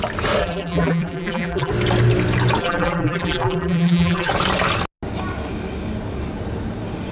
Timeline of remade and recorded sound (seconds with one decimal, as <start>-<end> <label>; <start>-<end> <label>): 0.0-0.4 recorded; 0.4-1.7 remade; 1.7-2.6 recorded; 2.6-4.3 remade; 4.3-7.1 recorded